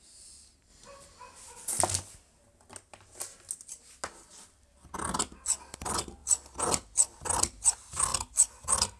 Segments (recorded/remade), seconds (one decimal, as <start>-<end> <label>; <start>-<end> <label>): 0.0-9.0 recorded